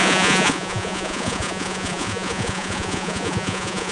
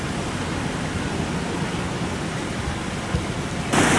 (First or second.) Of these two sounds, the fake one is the first